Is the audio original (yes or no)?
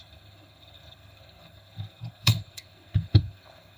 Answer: no